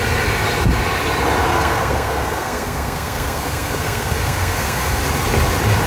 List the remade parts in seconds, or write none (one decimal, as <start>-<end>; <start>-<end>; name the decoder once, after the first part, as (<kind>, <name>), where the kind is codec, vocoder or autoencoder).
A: 1.5-5.0 (codec, SNAC)